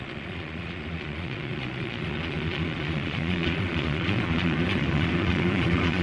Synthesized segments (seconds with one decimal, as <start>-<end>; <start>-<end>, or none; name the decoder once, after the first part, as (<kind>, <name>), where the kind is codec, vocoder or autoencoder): 0.0-6.0 (vocoder, Vocos)